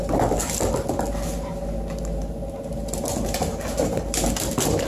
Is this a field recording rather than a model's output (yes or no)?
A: yes